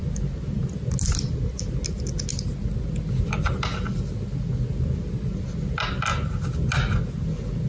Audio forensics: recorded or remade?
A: recorded